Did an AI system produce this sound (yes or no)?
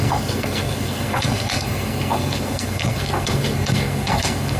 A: yes